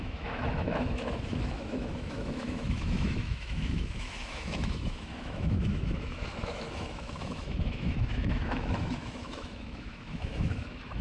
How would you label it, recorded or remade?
remade